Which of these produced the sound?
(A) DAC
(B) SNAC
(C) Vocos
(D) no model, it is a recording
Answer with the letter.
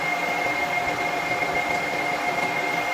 D